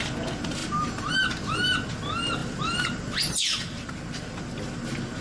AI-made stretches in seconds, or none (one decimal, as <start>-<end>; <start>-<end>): 2.4-3.9